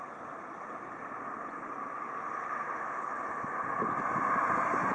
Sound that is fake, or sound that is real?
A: real